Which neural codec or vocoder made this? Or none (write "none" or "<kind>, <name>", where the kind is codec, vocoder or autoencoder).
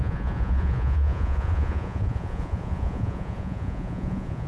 vocoder, Vocos